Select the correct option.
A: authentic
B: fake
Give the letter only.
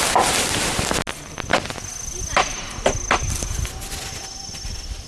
A